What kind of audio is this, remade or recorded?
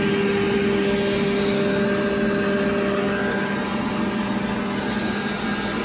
recorded